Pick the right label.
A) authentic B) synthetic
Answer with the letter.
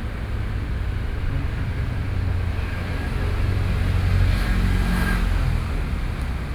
A